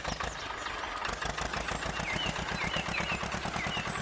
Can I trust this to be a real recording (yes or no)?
yes